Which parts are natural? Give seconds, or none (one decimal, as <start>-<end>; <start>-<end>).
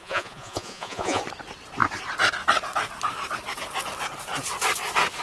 1.2-5.2